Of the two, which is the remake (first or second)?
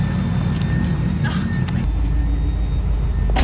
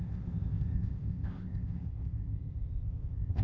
second